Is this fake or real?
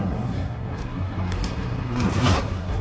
fake